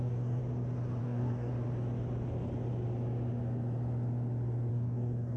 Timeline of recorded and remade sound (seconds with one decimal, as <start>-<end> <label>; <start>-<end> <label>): 0.0-0.4 remade; 0.4-1.0 recorded; 1.0-1.5 remade; 1.5-4.7 recorded; 4.7-5.4 remade